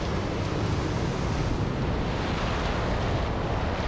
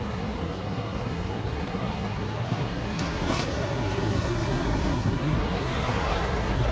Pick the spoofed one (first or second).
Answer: second